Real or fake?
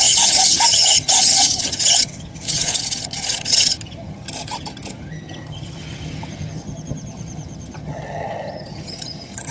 fake